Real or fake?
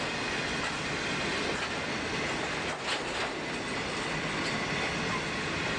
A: real